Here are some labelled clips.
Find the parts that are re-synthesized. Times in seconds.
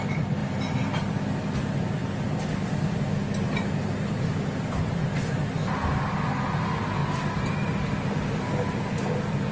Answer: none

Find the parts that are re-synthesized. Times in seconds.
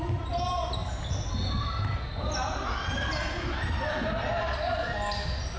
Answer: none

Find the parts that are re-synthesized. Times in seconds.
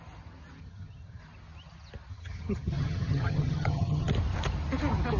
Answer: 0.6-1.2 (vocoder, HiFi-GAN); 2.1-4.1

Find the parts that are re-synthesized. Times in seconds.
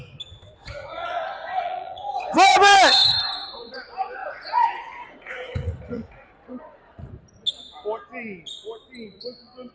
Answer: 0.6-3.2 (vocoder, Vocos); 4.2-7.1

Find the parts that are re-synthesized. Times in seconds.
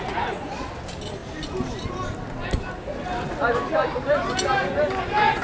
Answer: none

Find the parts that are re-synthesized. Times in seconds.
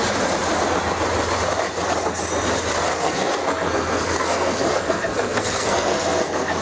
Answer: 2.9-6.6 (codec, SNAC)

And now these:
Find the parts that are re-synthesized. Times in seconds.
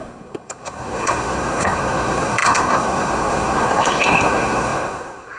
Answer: 0.0-5.4 (codec, SNAC)